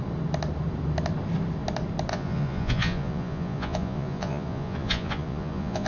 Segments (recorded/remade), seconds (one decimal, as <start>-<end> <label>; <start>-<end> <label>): 0.0-2.1 recorded; 2.1-5.9 remade